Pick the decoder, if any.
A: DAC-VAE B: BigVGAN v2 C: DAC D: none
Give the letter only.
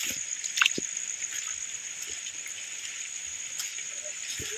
D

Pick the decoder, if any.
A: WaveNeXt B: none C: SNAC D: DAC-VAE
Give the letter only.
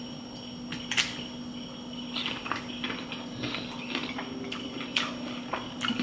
B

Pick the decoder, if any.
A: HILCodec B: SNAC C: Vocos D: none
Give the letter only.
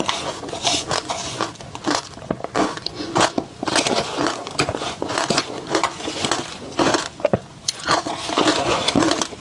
C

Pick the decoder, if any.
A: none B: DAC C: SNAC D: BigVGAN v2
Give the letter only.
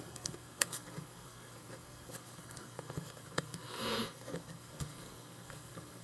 C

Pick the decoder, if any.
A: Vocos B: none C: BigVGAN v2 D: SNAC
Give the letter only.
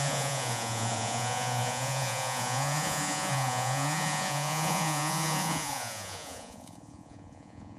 A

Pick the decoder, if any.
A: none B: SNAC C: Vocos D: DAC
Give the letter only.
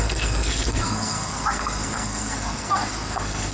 B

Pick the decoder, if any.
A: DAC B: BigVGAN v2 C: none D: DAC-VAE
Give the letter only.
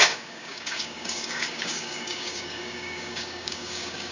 A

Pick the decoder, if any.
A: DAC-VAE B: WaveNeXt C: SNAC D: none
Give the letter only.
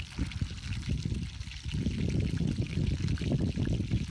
D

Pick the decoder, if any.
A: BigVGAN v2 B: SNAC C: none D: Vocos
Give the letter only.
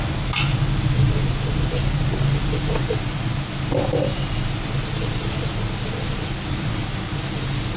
C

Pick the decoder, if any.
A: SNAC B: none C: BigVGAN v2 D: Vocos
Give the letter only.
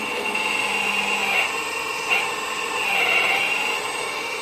B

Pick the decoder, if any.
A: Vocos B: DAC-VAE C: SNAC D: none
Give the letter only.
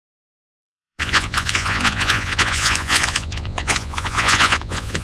A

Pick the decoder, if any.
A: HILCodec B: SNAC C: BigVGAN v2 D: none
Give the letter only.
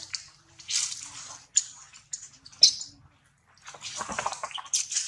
D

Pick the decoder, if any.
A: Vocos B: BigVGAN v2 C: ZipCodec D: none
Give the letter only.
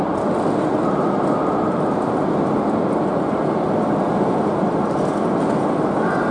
D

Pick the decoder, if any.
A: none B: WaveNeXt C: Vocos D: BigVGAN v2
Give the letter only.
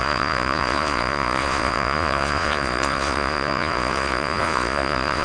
C